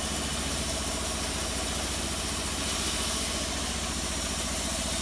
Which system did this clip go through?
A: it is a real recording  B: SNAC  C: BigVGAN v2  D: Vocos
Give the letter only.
A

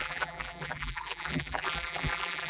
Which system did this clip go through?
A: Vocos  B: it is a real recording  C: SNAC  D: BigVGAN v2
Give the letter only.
D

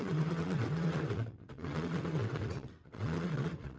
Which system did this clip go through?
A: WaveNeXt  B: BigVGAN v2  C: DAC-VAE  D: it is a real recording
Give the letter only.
A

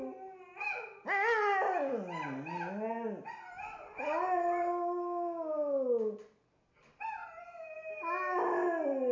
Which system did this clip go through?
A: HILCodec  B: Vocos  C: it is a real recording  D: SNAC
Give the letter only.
C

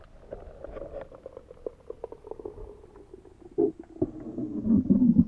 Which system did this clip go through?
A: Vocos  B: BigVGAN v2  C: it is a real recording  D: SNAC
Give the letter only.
C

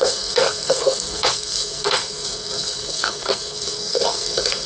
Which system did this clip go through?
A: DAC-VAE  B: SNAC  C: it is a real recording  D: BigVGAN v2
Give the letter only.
B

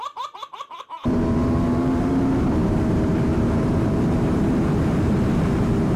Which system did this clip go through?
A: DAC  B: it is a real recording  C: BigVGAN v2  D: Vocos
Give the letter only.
C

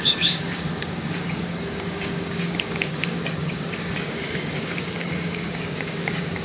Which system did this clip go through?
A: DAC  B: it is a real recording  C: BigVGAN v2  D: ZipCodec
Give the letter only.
A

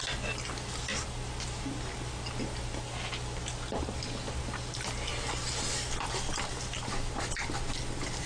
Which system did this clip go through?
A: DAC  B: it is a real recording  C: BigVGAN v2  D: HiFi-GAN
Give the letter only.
B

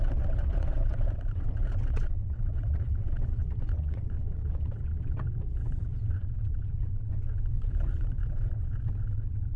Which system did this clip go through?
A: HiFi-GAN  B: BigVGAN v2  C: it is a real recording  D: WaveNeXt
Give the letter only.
D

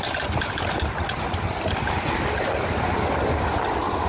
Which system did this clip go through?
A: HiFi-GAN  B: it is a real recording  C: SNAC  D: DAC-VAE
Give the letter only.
B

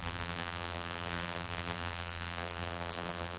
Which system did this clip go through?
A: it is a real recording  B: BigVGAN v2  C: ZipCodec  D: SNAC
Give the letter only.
B